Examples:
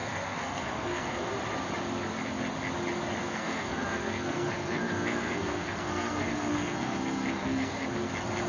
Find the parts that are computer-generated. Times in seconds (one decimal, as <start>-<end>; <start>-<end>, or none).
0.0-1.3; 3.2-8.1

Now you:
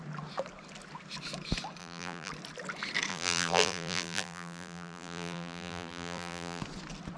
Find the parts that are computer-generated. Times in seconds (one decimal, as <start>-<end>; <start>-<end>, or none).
1.8-2.3; 3.1-6.6

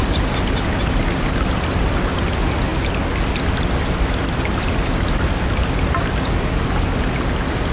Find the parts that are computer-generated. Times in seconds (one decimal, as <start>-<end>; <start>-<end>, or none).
none

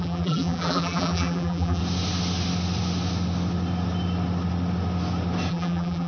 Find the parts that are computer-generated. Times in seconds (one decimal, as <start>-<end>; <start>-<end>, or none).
0.0-1.8; 5.5-6.1

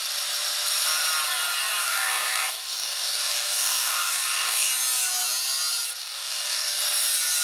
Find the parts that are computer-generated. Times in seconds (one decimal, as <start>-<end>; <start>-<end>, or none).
1.8-4.7; 6.0-6.8

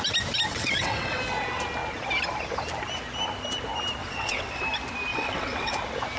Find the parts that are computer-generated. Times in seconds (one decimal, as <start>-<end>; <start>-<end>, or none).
0.5-1.2; 4.0-4.6; 5.1-5.8

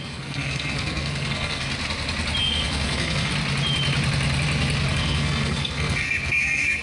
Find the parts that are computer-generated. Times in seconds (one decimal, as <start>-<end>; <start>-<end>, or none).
0.0-1.7; 2.4-3.3; 4.9-6.8

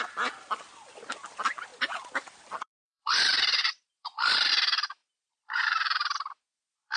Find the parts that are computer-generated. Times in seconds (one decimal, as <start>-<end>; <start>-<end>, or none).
1.7-4.5; 5.0-6.3